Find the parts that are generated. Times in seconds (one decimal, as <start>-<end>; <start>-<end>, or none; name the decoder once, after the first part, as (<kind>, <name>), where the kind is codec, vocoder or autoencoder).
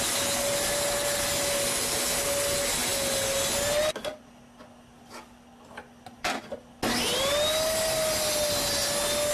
none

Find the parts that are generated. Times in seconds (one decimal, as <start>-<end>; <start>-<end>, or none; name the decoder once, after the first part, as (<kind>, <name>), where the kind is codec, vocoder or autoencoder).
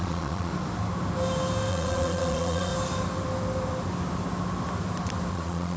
0.0-0.5 (vocoder, Vocos); 1.7-2.7; 5.3-5.8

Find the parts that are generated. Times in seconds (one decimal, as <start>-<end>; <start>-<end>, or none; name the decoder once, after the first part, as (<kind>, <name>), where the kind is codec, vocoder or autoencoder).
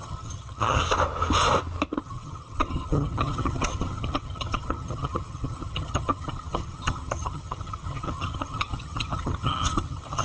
0.0-0.8 (vocoder, HiFi-GAN); 2.0-10.2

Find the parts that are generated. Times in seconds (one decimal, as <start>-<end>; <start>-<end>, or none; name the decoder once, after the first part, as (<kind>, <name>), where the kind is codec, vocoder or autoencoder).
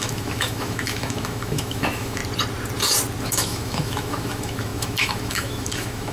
0.0-2.2 (autoencoder, DAC-VAE); 3.2-6.1